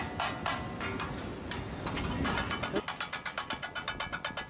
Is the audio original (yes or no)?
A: yes